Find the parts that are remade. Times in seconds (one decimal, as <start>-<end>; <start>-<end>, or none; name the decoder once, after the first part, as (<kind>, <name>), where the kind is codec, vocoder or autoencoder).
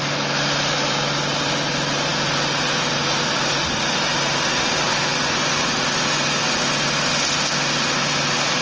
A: none